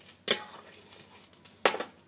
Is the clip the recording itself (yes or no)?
yes